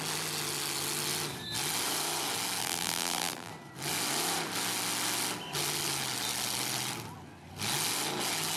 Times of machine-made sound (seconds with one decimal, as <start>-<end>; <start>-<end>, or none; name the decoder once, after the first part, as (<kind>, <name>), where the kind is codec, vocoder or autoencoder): 2.6-3.5 (vocoder, BigVGAN v2)